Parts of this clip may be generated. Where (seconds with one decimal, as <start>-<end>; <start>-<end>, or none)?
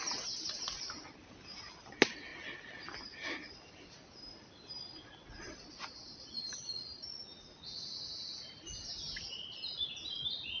none